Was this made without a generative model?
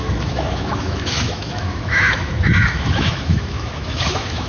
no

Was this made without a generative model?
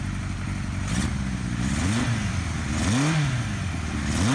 yes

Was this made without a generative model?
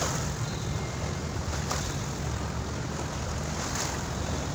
yes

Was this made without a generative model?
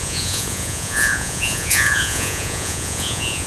no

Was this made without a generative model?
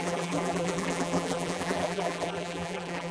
no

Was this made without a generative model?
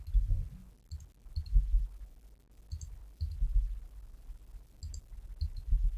yes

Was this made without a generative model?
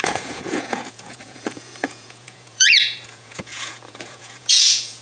no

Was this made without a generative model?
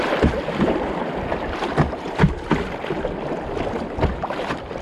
yes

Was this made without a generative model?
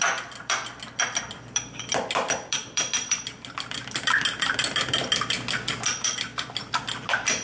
no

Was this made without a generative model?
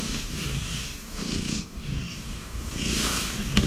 no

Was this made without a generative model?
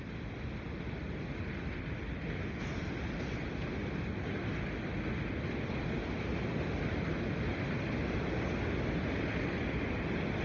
yes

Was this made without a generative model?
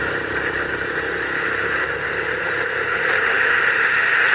yes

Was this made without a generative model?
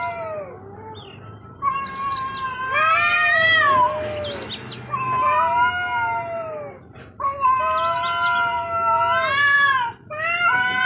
yes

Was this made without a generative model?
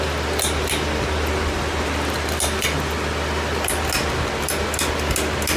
yes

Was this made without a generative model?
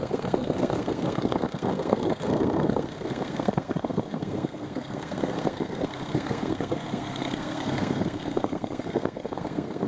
no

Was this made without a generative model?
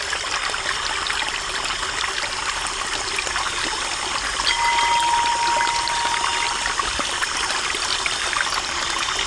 yes